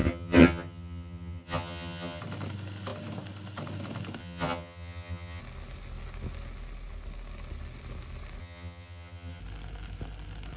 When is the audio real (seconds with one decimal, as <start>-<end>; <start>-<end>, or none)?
2.2-4.2; 5.4-8.4; 9.4-10.6